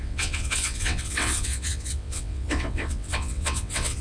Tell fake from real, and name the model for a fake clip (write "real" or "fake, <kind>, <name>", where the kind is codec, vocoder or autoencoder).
fake, vocoder, WaveNeXt